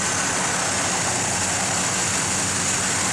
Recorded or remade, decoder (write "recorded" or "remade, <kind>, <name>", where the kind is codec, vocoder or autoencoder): recorded